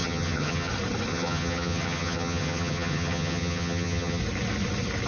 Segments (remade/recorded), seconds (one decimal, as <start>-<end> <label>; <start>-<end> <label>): 0.0-0.7 remade; 0.7-1.1 recorded; 1.1-4.2 remade; 4.2-5.1 recorded